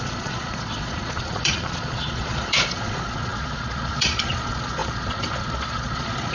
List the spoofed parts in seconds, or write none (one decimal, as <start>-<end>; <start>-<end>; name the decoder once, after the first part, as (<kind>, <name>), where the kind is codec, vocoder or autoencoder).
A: 0.0-6.3 (vocoder, Vocos)